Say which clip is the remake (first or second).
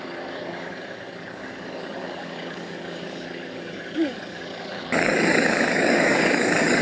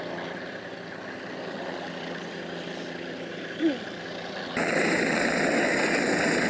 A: first